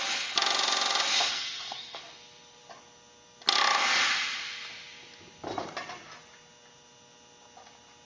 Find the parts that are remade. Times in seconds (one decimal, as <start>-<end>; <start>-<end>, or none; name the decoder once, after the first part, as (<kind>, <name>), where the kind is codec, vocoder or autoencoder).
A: 1.3-2.0 (codec, SNAC)